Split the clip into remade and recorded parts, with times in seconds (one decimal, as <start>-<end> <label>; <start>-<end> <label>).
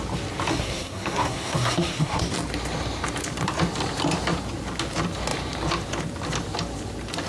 0.0-0.5 recorded; 0.5-2.2 remade; 2.2-7.3 recorded